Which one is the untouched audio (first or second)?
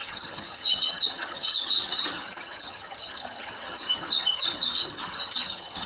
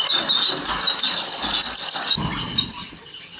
second